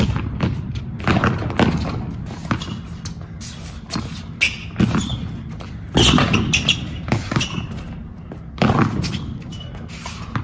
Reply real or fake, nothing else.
real